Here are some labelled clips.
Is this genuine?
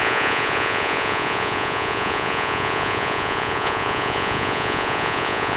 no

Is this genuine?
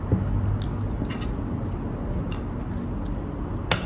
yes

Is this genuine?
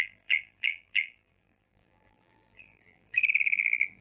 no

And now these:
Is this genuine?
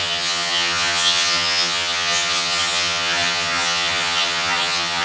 no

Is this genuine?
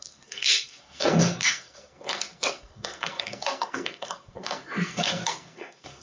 no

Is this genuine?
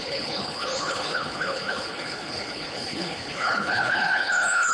no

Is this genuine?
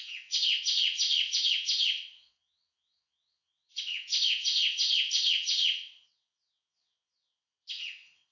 no